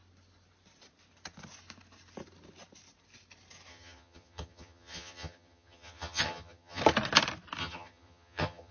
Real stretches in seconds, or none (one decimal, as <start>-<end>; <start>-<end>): 0.0-3.7; 6.8-7.6